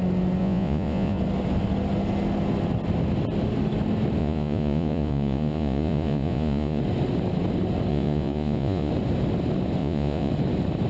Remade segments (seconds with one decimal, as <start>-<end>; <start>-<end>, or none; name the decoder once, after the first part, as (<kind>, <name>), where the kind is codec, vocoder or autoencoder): 0.4-1.2 (vocoder, Vocos); 4.2-6.8; 7.9-8.9; 9.8-10.3